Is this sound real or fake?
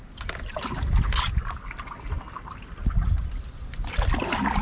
real